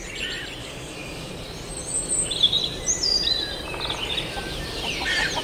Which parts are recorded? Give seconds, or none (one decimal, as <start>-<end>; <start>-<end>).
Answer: 0.0-0.6; 1.3-5.4